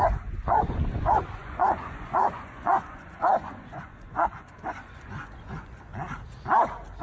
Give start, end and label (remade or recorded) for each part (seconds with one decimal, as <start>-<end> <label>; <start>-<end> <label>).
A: 0.0-5.9 remade; 5.9-7.0 recorded